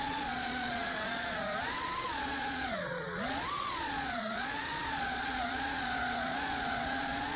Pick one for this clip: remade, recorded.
remade